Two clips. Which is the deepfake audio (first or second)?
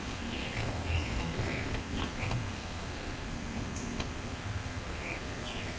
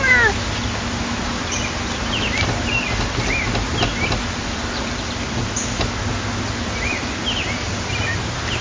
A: first